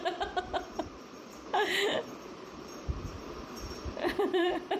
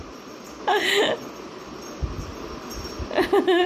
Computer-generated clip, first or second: first